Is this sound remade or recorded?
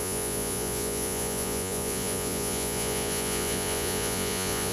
remade